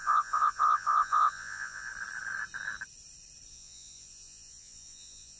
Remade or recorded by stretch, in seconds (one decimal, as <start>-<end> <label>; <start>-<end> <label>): 0.0-1.9 remade; 1.9-3.5 recorded; 3.5-5.4 remade